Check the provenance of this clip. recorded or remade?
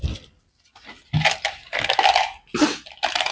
recorded